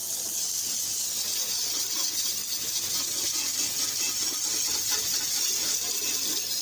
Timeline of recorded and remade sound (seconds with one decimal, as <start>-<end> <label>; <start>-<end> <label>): 0.0-1.2 remade; 1.2-6.6 recorded